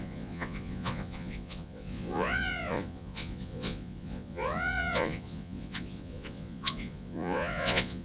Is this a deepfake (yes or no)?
yes